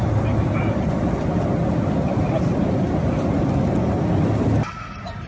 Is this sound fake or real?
real